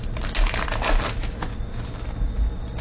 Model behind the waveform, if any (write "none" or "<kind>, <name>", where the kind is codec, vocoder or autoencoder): none